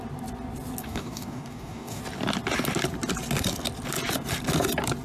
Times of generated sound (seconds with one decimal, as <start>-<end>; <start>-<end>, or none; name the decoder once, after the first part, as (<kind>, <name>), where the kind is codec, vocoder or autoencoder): 0.8-2.0 (codec, DAC)